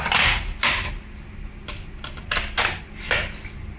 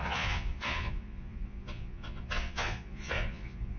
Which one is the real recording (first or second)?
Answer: first